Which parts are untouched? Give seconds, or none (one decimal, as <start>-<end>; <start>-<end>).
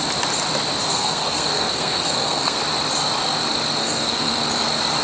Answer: 0.0-0.8; 2.6-3.8; 4.4-5.0